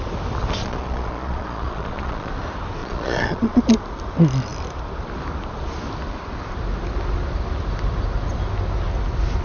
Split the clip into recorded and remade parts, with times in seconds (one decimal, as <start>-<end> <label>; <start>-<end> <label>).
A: 0.0-0.6 recorded; 0.6-2.3 remade; 2.3-2.8 recorded; 2.8-3.6 remade; 3.6-9.4 recorded